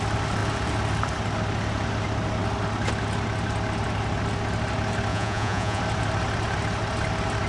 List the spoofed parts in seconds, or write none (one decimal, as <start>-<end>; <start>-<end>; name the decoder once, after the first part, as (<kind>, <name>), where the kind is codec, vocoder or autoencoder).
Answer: 5.1-5.8 (vocoder, Vocos)